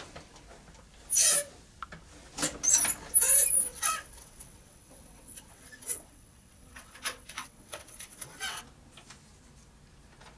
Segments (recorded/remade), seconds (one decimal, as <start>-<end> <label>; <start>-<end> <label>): 0.0-3.7 recorded; 3.7-8.6 remade; 8.6-10.4 recorded